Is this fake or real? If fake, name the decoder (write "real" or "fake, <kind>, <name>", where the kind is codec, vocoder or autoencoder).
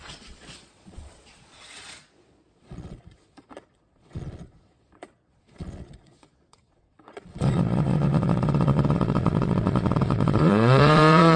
fake, vocoder, Vocos